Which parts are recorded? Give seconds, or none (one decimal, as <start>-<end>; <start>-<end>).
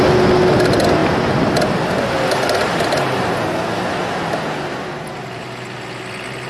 0.0-6.5